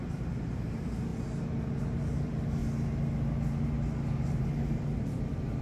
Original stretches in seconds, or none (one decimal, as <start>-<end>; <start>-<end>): 1.1-1.8; 2.6-4.4